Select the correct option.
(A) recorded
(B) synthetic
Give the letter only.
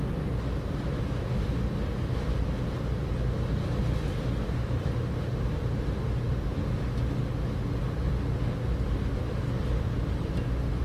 A